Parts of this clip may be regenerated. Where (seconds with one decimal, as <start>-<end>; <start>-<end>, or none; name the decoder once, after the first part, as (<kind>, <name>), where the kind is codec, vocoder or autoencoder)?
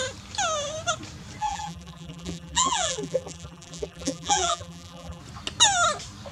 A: 1.4-5.2 (vocoder, BigVGAN v2)